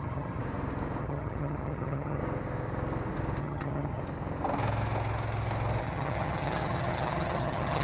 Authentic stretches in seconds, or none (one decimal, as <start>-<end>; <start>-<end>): 0.4-1.0; 2.2-3.4; 4.0-5.8